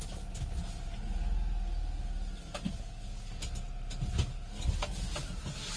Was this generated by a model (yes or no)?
no